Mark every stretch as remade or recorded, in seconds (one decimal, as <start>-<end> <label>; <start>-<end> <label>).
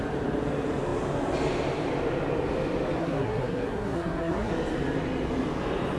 0.0-3.0 recorded; 3.0-4.5 remade; 4.5-6.0 recorded